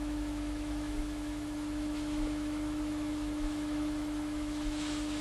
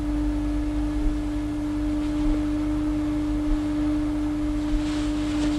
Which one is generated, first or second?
first